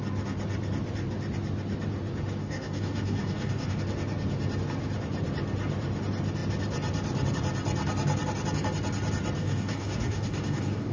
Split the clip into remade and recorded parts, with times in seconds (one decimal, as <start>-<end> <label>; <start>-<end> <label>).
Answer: 0.0-2.4 recorded; 2.4-3.8 remade; 3.8-9.4 recorded; 9.4-10.9 remade